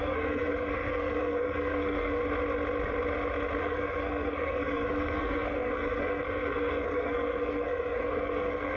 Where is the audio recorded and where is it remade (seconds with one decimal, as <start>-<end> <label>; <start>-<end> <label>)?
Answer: 0.0-2.2 remade; 2.2-3.6 recorded; 3.6-8.8 remade